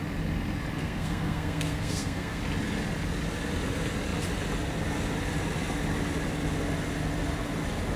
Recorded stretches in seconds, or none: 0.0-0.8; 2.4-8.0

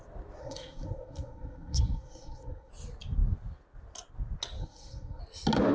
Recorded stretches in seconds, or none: 0.0-0.4; 2.7-4.6; 5.2-5.7

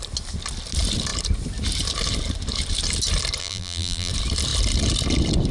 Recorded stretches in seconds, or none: 0.0-3.4; 4.1-5.5

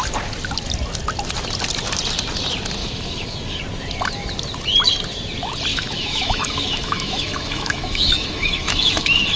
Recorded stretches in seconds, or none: 0.0-2.8; 3.6-5.7

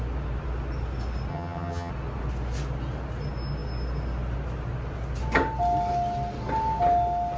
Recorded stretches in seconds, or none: 0.0-1.3; 1.9-7.4

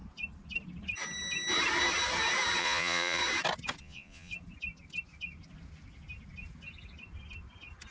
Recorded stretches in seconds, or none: 0.0-2.6; 3.2-3.8; 4.3-7.9